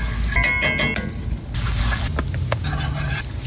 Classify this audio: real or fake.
real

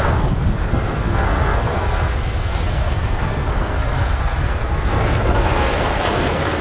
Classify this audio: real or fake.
fake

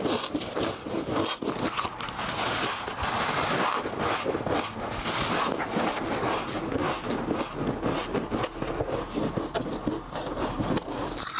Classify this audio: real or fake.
real